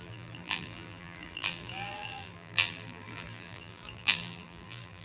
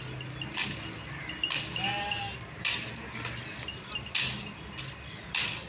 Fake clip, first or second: first